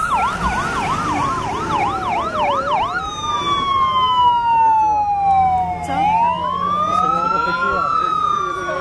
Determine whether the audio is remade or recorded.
recorded